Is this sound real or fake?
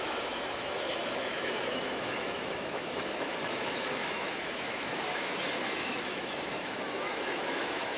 fake